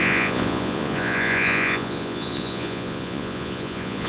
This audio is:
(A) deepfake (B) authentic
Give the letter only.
A